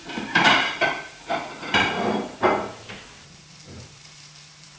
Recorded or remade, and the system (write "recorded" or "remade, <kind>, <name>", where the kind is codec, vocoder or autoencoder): remade, vocoder, BigVGAN v2